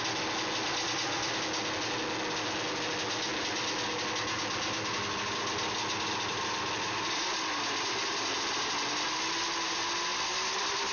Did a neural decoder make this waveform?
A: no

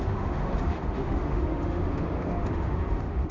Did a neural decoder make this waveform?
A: yes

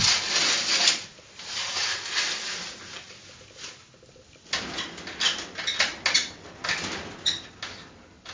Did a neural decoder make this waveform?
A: no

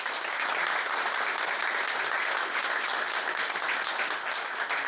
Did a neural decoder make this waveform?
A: no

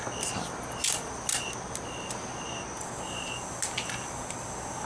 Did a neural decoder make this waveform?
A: no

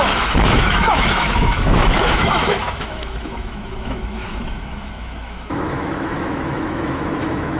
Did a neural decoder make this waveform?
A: yes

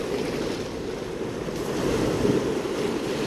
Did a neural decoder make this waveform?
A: no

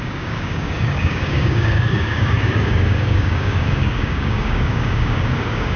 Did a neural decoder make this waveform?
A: yes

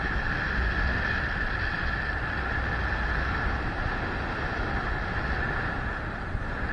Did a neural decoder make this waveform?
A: no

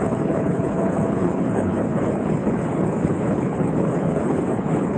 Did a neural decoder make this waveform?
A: yes